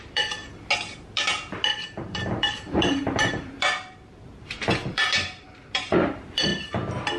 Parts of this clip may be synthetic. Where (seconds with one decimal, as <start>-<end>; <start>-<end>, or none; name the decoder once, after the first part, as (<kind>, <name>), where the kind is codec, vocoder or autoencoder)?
0.0-0.4 (vocoder, BigVGAN v2); 1.8-6.5